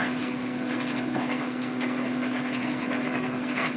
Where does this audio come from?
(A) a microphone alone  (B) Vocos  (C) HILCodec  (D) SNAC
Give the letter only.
D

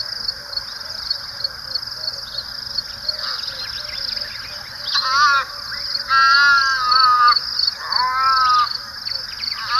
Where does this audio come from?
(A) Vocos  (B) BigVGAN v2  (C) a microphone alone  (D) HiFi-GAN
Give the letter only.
C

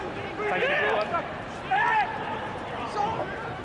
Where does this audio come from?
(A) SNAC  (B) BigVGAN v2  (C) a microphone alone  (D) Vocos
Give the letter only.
C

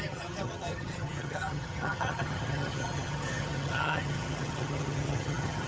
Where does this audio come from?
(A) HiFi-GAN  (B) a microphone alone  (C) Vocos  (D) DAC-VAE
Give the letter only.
A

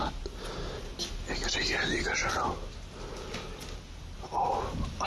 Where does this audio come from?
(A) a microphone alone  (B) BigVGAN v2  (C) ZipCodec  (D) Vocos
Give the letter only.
A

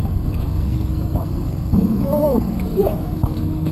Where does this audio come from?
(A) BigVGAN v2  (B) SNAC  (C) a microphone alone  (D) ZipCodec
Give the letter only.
B